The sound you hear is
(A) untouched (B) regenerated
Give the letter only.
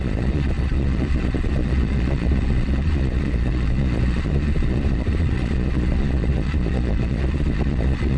B